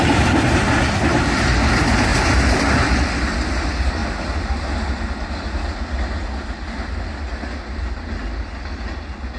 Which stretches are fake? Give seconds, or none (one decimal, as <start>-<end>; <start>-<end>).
none